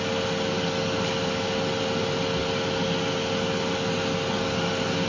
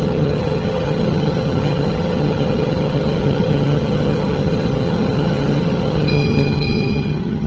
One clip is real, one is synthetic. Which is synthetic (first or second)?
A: second